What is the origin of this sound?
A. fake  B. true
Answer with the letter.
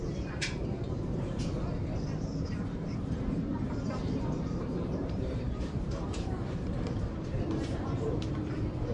A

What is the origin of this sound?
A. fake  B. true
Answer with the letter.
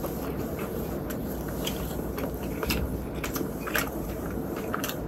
A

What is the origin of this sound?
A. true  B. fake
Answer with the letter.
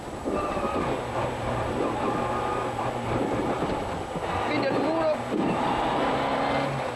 A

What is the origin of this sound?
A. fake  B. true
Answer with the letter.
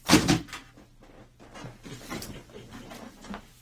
B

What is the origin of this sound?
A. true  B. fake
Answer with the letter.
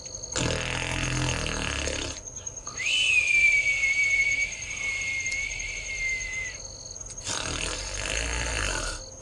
A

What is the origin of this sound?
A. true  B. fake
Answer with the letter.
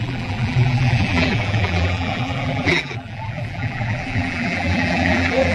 B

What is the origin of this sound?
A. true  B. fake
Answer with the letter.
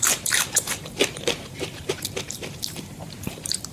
B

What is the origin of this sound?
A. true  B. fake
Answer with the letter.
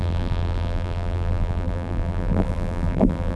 B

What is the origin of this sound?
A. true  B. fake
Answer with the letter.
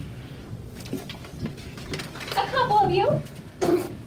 A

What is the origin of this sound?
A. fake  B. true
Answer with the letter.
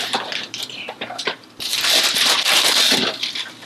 A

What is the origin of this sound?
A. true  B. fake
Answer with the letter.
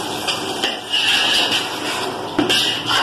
A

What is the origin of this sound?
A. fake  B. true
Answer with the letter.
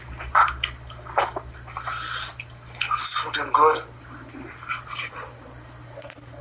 B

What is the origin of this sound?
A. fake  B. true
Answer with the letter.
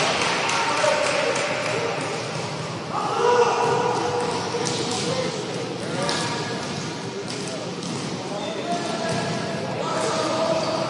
B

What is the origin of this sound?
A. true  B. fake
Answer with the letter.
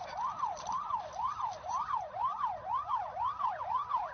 B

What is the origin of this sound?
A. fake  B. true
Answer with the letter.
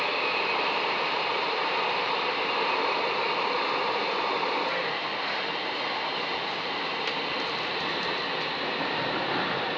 A